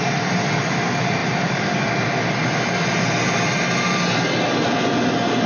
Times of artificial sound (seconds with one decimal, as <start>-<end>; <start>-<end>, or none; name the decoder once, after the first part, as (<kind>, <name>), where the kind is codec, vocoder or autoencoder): none